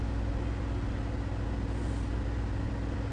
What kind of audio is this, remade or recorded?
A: recorded